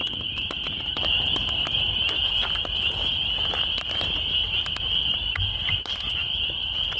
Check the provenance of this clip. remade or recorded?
recorded